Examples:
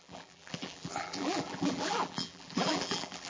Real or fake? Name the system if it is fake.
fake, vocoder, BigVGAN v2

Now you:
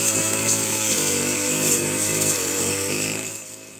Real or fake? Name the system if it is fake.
fake, codec, SNAC